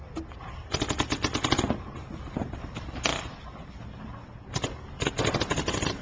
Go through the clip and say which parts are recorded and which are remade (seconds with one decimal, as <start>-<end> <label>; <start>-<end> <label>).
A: 0.0-6.0 recorded